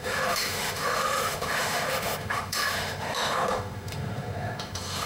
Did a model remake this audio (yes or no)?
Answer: yes